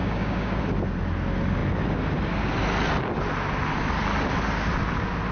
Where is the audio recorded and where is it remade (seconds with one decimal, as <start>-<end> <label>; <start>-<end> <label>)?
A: 0.0-0.6 remade; 0.6-5.3 recorded